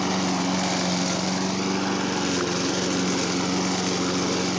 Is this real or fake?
real